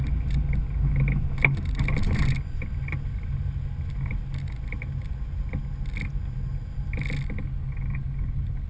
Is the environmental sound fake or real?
real